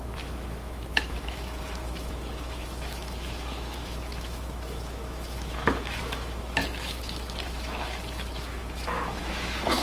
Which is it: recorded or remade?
remade